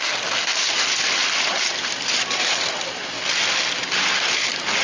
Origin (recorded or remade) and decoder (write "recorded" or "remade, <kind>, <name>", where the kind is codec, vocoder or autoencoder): recorded